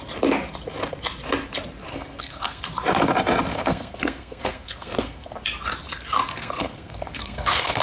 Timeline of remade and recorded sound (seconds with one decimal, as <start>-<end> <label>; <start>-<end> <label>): 0.0-1.9 recorded; 1.9-2.6 remade; 2.6-3.5 recorded; 3.5-5.3 remade; 5.3-6.3 recorded; 6.3-7.8 remade